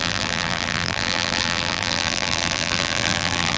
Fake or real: fake